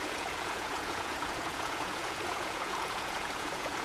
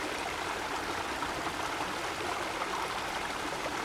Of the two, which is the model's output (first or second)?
first